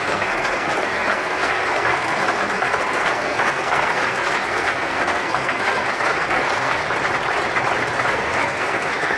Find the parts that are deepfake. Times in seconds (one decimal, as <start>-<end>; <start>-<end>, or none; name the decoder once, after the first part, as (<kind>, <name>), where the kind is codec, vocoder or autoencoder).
0.0-6.8 (codec, SNAC); 8.1-9.2